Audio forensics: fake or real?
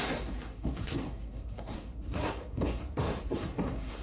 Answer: fake